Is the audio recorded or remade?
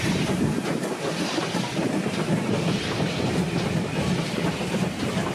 recorded